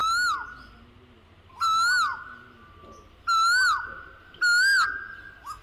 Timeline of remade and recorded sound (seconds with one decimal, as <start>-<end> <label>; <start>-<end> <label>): 0.0-5.6 recorded